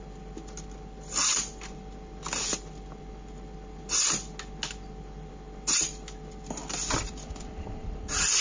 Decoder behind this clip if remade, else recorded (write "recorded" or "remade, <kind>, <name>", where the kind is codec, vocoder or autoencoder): recorded